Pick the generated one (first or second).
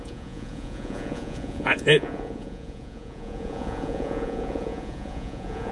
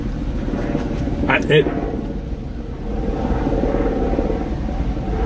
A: first